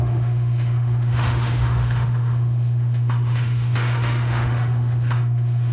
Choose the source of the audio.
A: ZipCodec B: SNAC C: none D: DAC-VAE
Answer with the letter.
D